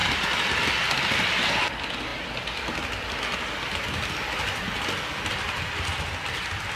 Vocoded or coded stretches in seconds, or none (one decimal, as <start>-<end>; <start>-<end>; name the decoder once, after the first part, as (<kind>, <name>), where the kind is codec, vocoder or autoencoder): 0.0-2.1 (vocoder, BigVGAN v2); 5.3-6.8